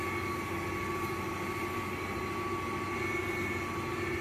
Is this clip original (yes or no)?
yes